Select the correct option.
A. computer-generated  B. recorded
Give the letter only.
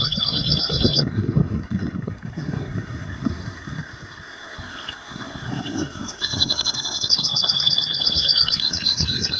A